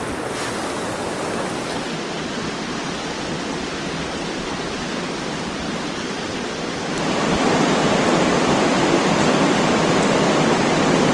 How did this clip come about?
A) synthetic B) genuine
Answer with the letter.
B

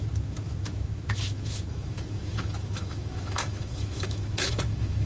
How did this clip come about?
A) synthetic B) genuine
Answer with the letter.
A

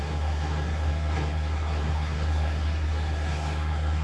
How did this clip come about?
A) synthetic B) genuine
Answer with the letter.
A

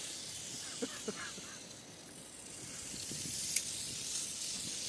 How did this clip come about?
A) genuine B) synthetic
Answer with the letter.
A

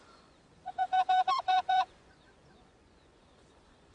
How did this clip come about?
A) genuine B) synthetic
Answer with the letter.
B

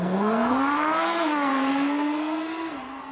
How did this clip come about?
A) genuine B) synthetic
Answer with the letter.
B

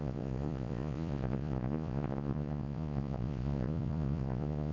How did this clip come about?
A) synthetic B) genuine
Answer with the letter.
A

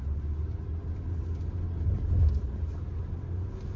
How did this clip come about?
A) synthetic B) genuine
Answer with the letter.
B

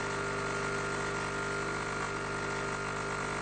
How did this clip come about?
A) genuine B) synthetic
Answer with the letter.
A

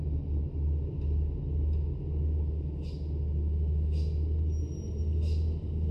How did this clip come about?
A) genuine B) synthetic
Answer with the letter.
A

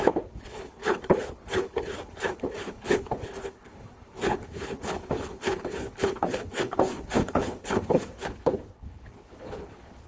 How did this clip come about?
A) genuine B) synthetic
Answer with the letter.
B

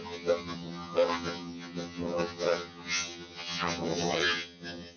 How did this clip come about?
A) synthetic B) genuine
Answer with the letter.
A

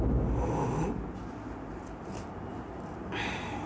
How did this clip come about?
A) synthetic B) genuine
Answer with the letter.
B